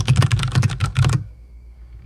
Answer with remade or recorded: remade